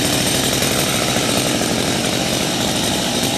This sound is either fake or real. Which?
fake